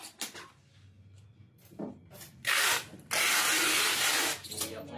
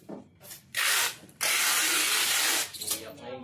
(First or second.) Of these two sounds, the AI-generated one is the second